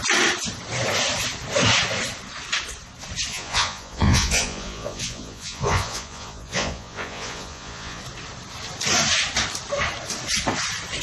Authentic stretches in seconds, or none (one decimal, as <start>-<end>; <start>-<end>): 0.0-3.3; 8.0-11.0